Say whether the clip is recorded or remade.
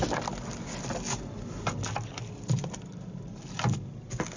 recorded